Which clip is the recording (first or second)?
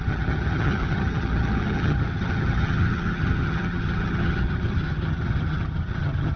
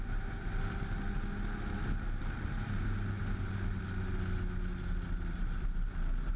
second